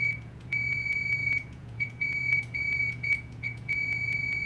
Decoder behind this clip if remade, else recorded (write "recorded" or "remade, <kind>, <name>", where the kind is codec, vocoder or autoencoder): remade, vocoder, Vocos